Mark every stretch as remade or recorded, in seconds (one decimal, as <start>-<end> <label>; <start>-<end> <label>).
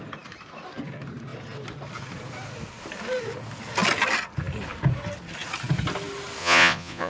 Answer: 0.0-6.4 recorded; 6.4-7.1 remade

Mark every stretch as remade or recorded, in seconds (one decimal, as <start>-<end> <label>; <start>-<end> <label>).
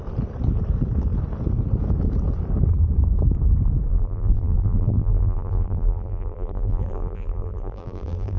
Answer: 0.0-3.9 recorded; 3.9-8.4 remade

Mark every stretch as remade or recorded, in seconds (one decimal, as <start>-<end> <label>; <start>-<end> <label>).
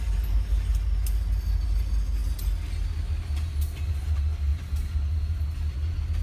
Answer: 0.0-6.2 recorded